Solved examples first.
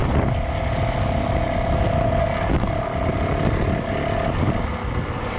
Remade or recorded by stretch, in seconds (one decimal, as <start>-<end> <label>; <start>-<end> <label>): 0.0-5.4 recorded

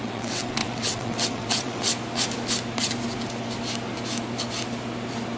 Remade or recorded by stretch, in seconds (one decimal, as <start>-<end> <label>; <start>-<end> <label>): 0.0-1.9 remade; 1.9-5.4 recorded

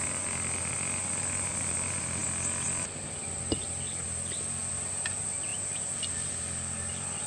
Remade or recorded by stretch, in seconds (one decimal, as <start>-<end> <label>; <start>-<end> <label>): 0.0-7.3 recorded